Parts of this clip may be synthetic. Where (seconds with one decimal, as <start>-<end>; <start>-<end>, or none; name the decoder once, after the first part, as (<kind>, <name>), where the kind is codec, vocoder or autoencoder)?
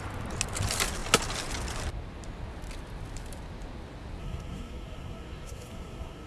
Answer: 4.2-6.3 (codec, SNAC)